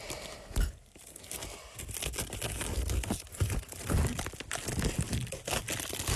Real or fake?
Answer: real